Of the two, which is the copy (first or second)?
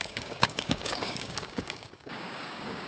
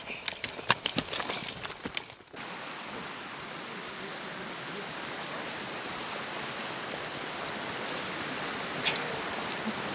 first